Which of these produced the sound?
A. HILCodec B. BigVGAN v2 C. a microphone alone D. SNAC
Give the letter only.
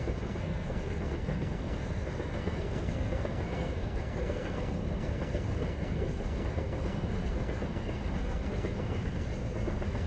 D